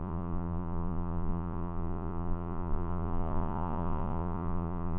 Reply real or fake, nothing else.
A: fake